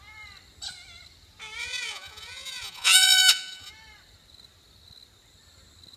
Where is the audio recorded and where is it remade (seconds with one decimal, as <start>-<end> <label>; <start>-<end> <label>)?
0.0-1.6 recorded; 1.6-3.7 remade; 3.7-6.0 recorded